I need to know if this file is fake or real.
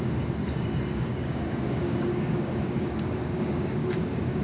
fake